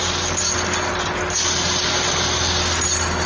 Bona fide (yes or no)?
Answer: yes